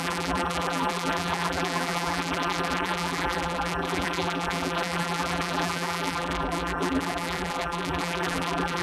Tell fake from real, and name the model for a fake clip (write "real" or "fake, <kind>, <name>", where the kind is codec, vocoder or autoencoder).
fake, vocoder, BigVGAN v2